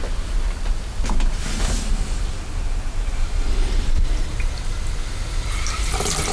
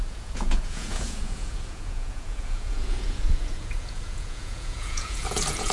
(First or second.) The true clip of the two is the first